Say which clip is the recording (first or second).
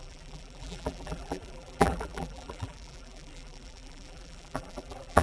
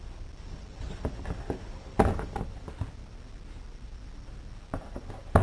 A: second